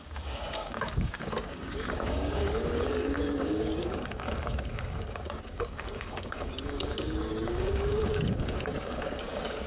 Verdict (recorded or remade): remade